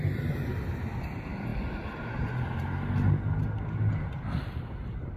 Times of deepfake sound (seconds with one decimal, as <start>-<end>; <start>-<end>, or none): none